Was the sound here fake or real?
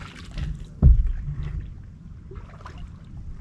real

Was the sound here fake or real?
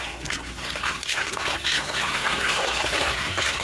fake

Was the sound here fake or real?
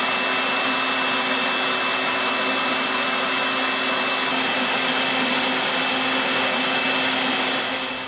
real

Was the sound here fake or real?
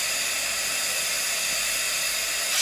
real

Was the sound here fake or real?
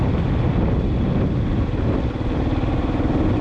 real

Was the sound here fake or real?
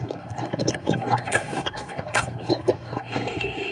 fake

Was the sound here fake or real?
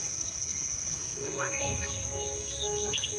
fake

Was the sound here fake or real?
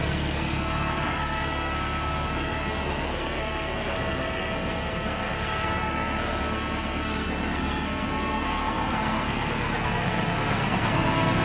fake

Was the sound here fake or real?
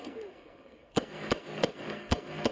fake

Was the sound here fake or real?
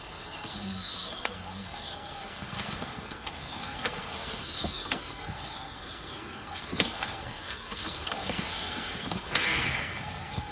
fake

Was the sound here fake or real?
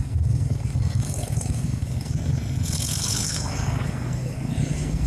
fake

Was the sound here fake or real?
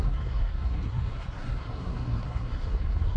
fake